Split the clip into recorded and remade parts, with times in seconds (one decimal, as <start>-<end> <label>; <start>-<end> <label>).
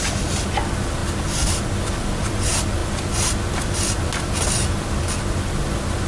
0.0-6.1 recorded